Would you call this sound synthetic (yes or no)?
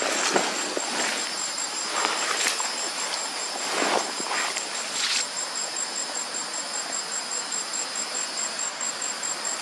no